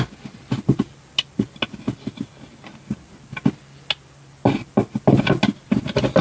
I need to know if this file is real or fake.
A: real